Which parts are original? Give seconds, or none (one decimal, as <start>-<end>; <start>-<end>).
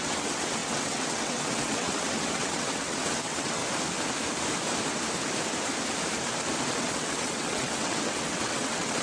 3.6-6.7